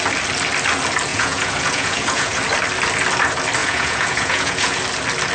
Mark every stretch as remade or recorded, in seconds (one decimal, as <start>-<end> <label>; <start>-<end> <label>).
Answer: 0.0-1.1 recorded; 1.1-2.4 remade; 2.4-3.6 recorded; 3.6-4.8 remade; 4.8-5.3 recorded